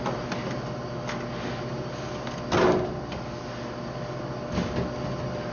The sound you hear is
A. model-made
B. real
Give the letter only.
B